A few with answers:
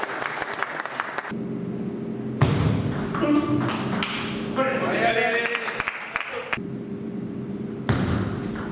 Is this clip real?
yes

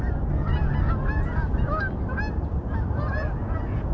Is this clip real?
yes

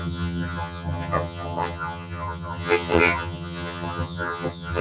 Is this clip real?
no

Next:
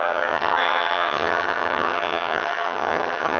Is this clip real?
no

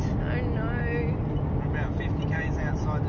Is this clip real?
yes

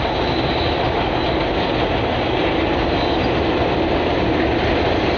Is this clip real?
yes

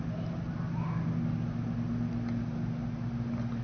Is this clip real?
yes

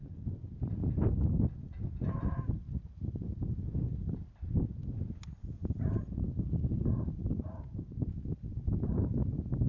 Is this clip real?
yes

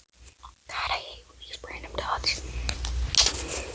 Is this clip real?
yes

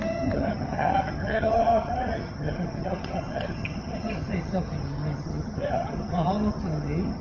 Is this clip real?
no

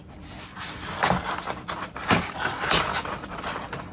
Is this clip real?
yes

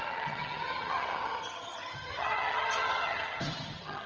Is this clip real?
no